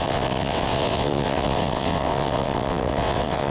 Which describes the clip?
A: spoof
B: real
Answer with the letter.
A